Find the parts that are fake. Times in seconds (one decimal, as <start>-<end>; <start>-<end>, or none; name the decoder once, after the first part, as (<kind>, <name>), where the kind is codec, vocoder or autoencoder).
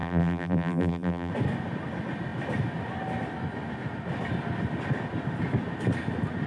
0.0-1.3 (vocoder, BigVGAN v2)